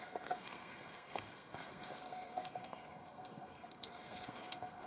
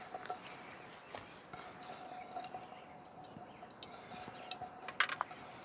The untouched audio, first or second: second